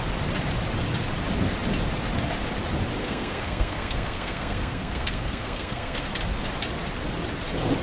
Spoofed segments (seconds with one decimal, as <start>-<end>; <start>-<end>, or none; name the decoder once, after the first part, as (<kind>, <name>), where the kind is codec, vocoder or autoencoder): 3.0-6.1 (codec, SNAC)